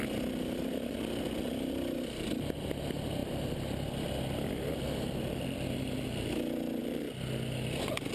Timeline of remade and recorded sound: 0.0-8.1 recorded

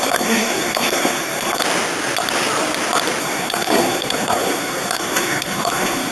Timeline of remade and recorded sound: 0.0-1.6 remade; 1.6-3.2 recorded; 3.2-6.1 remade

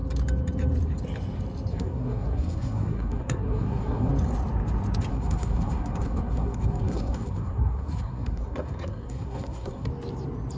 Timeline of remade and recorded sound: 0.0-1.7 recorded; 1.7-4.1 remade; 4.1-5.1 recorded; 5.1-9.9 remade; 9.9-10.6 recorded

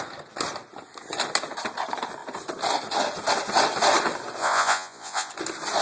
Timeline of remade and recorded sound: 0.0-4.4 recorded; 4.4-5.3 remade; 5.3-5.8 recorded